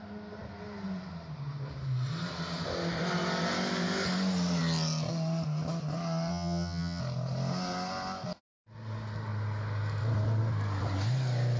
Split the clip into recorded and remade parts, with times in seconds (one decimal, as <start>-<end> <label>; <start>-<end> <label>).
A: 0.0-6.3 recorded; 6.3-7.0 remade; 7.0-11.6 recorded